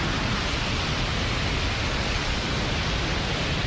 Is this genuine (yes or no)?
yes